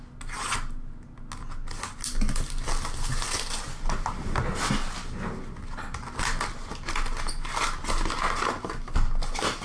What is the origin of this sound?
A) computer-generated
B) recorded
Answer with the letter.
B